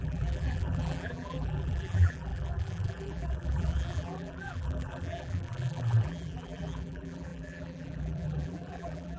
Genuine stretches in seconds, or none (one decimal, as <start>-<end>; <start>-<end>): none